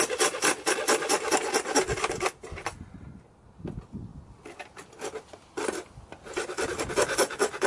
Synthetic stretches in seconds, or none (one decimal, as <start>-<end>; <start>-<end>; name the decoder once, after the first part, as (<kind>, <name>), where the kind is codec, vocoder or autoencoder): none